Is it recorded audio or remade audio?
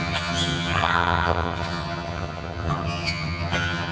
remade